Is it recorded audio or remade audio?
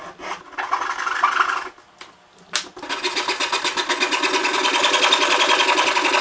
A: recorded